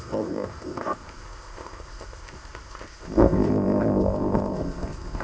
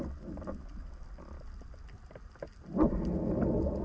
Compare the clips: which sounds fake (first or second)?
first